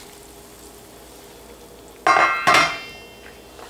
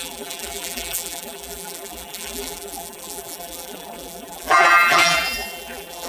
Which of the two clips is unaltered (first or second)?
first